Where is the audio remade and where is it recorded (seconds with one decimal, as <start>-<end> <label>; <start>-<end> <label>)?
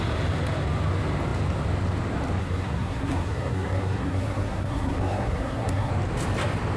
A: 0.0-2.4 recorded; 2.4-5.9 remade; 5.9-6.8 recorded